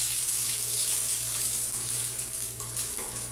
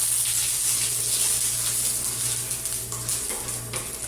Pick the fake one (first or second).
first